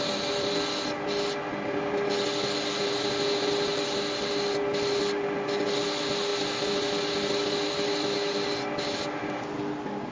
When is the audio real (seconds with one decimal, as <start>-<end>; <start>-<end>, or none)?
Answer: 0.0-10.1

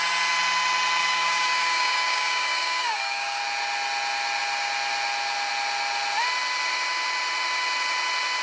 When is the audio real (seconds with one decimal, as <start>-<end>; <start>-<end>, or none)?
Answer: 0.0-1.0; 3.4-8.4

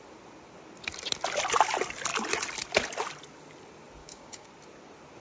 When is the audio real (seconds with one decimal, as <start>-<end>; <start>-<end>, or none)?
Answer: 0.0-4.0; 4.5-5.2

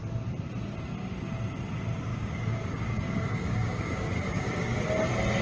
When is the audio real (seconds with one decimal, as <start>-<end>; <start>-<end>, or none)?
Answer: 0.0-2.1; 4.8-5.4